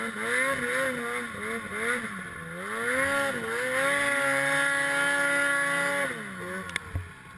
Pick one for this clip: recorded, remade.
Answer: recorded